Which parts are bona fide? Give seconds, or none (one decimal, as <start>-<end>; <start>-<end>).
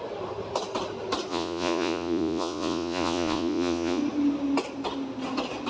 0.0-1.3; 4.0-5.7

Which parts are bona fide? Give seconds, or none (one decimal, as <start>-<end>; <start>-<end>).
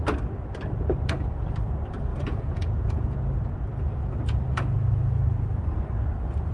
0.0-2.1; 3.1-6.5